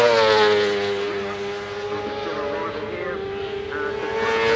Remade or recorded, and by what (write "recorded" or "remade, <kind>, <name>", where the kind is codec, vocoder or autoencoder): recorded